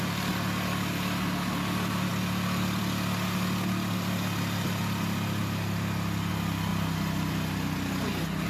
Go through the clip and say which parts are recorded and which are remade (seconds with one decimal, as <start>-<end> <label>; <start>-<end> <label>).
0.0-8.5 recorded